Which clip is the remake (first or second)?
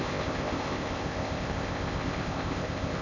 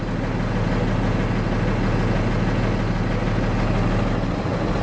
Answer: first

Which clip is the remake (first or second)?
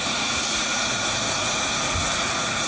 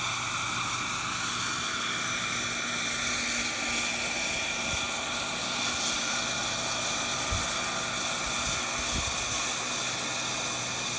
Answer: first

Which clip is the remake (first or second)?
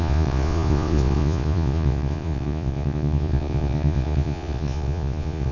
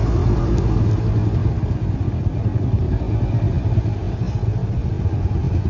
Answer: first